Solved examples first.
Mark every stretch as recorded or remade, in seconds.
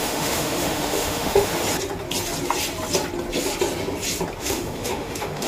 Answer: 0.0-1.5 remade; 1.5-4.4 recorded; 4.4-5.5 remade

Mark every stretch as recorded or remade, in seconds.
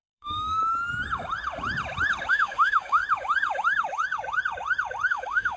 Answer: 0.0-0.6 remade; 0.6-2.3 recorded; 2.3-3.0 remade; 3.0-5.1 recorded; 5.1-5.6 remade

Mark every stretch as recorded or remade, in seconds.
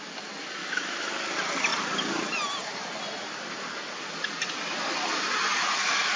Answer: 0.0-0.6 recorded; 0.6-1.1 remade; 1.1-6.2 recorded